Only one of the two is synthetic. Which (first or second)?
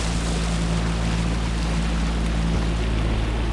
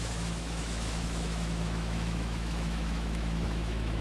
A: second